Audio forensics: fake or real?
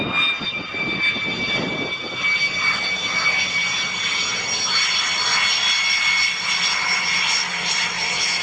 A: real